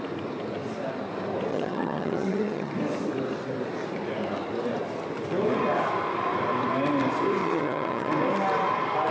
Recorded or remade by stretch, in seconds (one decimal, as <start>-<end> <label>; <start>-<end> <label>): 0.0-1.5 recorded; 1.5-2.7 remade; 2.7-7.4 recorded; 7.4-8.1 remade; 8.1-9.1 recorded